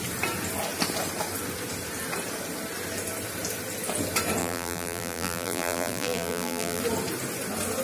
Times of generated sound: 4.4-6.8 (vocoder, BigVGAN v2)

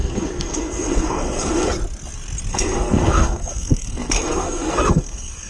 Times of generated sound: 0.0-1.7 (codec, SNAC); 2.5-5.5

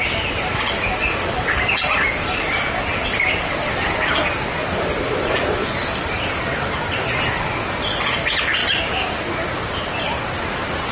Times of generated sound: none

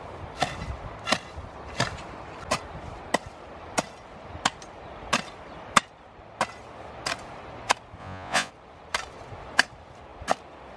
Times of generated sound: 8.0-8.5 (vocoder, Vocos)

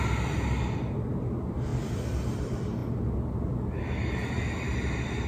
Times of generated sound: none

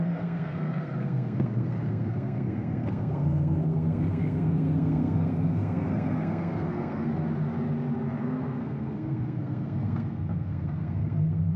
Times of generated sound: 0.0-7.1 (codec, SNAC); 8.2-11.6

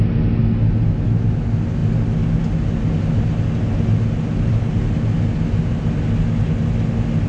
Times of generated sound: none